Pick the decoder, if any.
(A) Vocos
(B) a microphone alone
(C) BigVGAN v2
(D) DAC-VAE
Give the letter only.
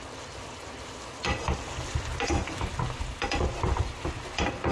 B